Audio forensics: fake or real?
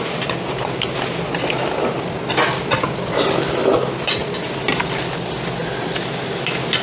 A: real